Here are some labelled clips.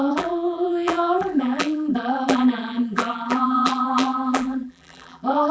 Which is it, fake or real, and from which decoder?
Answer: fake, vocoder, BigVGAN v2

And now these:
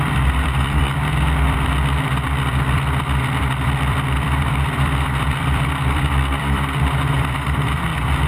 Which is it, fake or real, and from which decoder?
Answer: fake, vocoder, BigVGAN v2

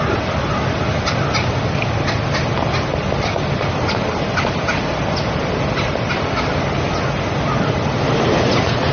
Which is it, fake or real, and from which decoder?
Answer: real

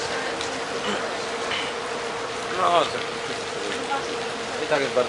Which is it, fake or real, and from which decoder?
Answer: real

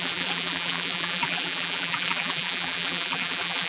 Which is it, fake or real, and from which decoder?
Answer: fake, vocoder, BigVGAN v2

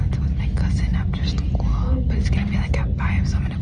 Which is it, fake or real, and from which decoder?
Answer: real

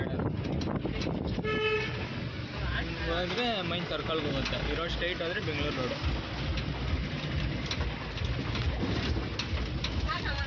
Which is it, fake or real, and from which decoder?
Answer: real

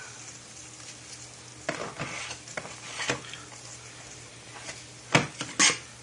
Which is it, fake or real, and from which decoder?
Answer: real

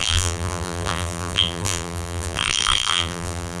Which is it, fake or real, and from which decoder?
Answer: fake, vocoder, BigVGAN v2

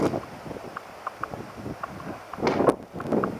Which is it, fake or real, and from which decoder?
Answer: real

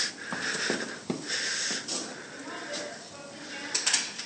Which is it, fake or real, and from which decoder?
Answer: real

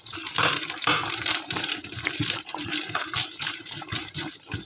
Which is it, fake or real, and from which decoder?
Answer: fake, vocoder, BigVGAN v2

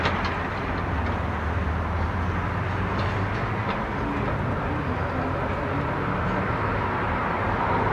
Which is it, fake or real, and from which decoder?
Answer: real